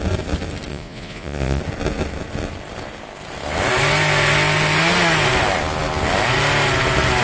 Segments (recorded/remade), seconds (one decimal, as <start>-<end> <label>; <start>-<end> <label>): 0.0-0.7 recorded; 0.7-1.6 remade; 1.6-7.2 recorded